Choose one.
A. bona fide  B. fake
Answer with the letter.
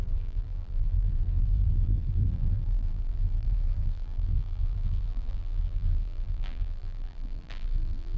B